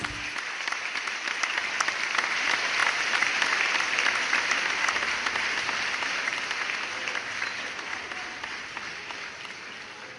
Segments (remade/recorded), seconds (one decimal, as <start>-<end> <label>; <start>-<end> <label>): 0.0-10.2 recorded

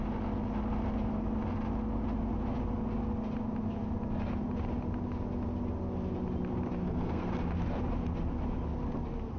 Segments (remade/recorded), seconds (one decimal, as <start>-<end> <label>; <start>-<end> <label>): 0.0-6.8 recorded; 6.8-7.3 remade; 7.3-9.4 recorded

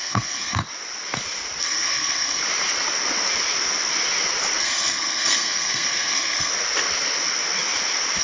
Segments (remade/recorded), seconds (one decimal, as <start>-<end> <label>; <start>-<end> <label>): 0.0-0.6 remade; 0.6-1.6 recorded; 1.6-2.4 remade; 2.4-4.6 recorded; 4.6-6.5 remade; 6.5-8.2 recorded

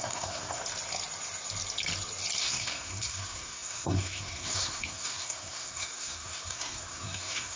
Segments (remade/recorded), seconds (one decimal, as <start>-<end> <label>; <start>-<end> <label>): 0.0-0.6 remade; 0.6-2.4 recorded; 2.4-7.6 remade

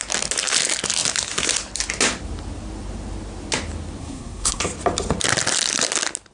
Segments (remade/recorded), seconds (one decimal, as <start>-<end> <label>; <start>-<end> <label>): 0.0-4.0 recorded; 4.0-4.6 remade; 4.6-6.3 recorded

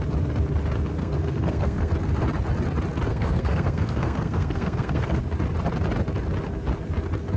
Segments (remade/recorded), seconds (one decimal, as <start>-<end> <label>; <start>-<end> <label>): 0.0-1.0 recorded; 1.0-1.9 remade; 1.9-3.1 recorded; 3.1-5.2 remade; 5.2-7.4 recorded